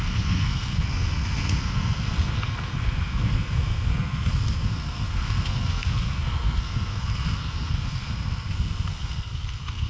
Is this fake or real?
fake